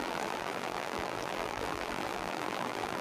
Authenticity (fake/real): fake